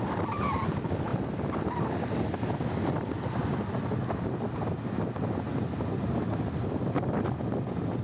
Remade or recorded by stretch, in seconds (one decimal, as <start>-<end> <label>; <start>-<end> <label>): 0.0-8.0 recorded

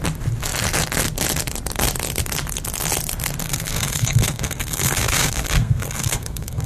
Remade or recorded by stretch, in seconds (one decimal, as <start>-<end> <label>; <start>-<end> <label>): 0.0-3.4 recorded; 3.4-6.7 remade